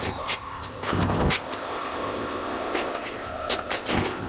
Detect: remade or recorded remade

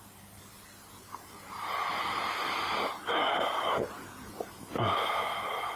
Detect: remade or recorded recorded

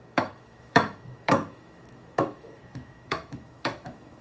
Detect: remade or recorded remade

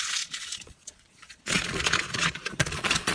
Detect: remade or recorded remade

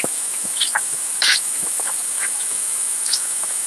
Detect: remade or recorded remade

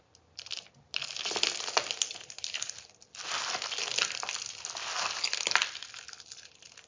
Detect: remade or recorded recorded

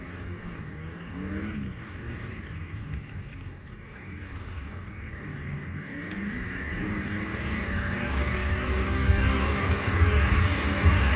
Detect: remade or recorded remade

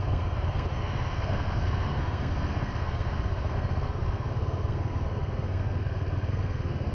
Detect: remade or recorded remade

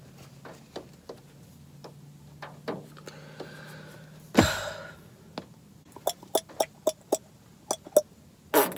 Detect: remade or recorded recorded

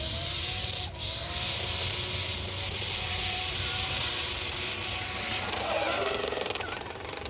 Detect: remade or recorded remade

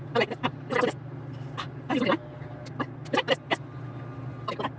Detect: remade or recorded recorded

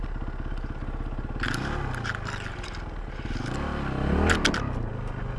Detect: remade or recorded recorded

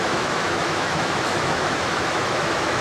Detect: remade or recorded remade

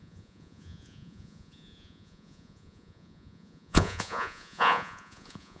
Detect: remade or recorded remade